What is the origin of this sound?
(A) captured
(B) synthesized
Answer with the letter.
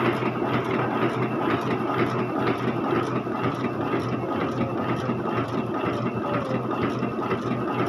A